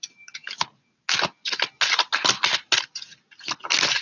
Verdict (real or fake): real